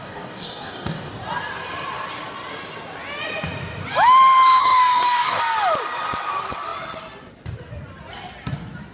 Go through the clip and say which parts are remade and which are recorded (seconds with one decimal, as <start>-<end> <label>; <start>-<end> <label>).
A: 0.0-1.1 remade; 1.1-4.6 recorded; 4.6-5.4 remade; 5.4-8.9 recorded

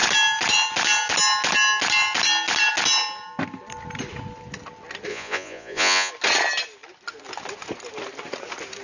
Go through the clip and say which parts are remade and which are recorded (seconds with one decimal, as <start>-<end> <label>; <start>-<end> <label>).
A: 0.0-5.1 recorded; 5.1-6.1 remade; 6.1-8.8 recorded

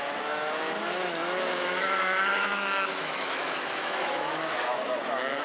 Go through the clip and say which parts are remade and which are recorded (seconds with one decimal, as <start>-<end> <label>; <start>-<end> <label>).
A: 0.0-5.4 remade

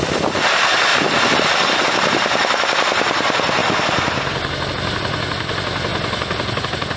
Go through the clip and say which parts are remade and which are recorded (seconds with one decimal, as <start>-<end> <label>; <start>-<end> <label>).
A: 0.0-7.0 recorded

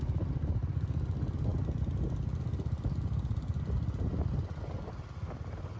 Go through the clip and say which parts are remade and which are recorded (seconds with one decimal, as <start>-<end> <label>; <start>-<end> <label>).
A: 0.0-5.8 recorded

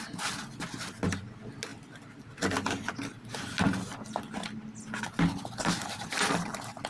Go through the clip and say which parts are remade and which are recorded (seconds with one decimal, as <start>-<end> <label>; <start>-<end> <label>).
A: 0.0-6.9 recorded

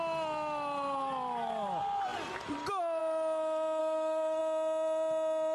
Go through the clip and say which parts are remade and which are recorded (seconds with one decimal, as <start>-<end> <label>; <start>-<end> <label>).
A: 0.0-3.8 recorded; 3.8-4.4 remade; 4.4-5.5 recorded